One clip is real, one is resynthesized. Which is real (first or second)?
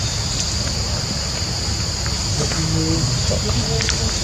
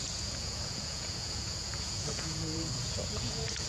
first